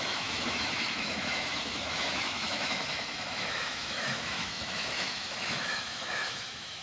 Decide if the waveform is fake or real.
fake